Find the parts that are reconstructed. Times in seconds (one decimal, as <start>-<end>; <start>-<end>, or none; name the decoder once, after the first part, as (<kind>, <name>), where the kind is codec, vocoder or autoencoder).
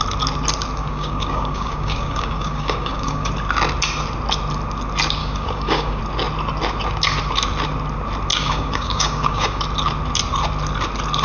0.8-3.3 (codec, DAC); 5.2-6.0; 8.3-9.6